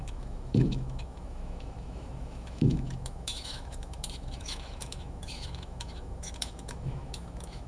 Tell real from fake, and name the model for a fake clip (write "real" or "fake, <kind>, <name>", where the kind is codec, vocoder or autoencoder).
fake, autoencoder, DAC-VAE